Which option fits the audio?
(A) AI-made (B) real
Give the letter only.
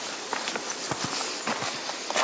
B